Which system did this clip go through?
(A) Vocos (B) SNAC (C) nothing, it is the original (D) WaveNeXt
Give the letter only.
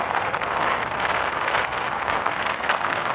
B